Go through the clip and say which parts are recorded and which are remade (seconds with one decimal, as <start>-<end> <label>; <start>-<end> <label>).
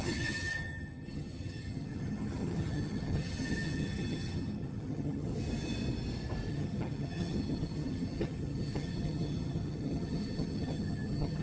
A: 0.0-5.3 remade; 5.3-6.5 recorded; 6.5-11.4 remade